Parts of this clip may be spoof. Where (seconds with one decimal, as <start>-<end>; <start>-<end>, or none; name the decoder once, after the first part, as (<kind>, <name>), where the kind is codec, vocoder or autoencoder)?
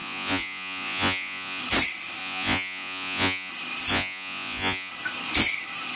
0.0-1.6 (vocoder, Vocos); 2.2-3.5; 3.9-4.9